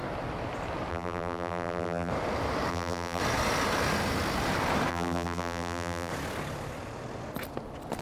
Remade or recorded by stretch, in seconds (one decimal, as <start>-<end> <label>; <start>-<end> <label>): 0.0-0.9 recorded; 0.9-2.1 remade; 2.1-2.7 recorded; 2.7-3.2 remade; 3.2-4.9 recorded; 4.9-6.1 remade; 6.1-8.0 recorded